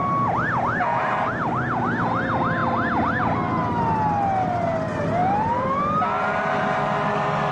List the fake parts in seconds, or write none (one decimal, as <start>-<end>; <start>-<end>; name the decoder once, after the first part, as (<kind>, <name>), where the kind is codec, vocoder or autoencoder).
5.2-5.8 (vocoder, BigVGAN v2)

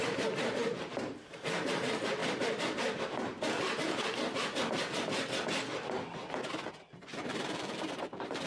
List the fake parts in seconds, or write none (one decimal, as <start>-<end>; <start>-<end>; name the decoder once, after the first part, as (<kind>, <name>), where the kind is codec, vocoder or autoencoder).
0.0-2.2 (vocoder, BigVGAN v2); 6.7-8.5

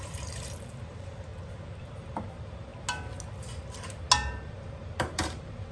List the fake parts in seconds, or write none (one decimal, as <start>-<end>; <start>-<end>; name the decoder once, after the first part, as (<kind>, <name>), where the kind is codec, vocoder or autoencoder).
0.0-1.3 (vocoder, BigVGAN v2); 1.8-2.7; 4.3-5.7

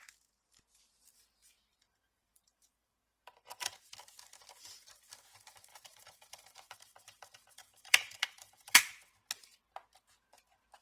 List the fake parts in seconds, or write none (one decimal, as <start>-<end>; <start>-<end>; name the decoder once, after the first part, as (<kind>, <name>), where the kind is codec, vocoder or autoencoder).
1.7-3.9 (vocoder, BigVGAN v2); 5.7-8.8

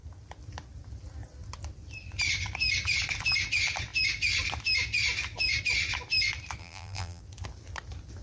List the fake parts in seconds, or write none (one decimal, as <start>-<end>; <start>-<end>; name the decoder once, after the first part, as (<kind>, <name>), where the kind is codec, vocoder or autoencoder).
6.6-7.2 (vocoder, BigVGAN v2)

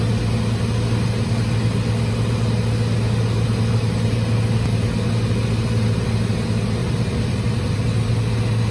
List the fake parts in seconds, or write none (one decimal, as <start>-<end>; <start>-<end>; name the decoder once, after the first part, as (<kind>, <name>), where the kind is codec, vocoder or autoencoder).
6.8-8.1 (vocoder, BigVGAN v2)

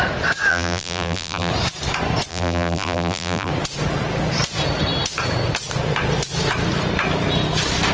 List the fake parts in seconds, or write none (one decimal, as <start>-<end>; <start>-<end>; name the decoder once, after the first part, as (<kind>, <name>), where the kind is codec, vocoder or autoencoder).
0.5-1.5 (vocoder, BigVGAN v2); 2.3-3.5

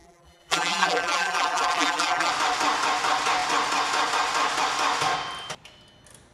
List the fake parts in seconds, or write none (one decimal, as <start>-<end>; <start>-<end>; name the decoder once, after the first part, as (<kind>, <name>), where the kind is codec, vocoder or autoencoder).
0.0-2.3 (vocoder, BigVGAN v2)